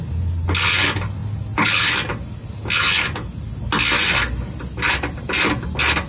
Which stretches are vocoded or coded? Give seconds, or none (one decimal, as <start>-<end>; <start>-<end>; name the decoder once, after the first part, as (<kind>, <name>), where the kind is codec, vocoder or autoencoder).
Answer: none